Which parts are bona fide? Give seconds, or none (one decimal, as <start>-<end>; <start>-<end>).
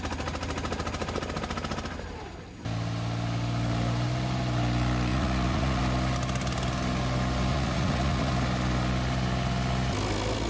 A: 0.0-5.1; 5.8-7.5; 8.3-10.5